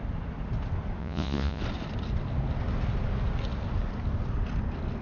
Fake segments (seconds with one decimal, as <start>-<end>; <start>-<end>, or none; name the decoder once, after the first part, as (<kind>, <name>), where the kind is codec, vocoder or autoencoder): 1.0-1.6 (vocoder, Vocos)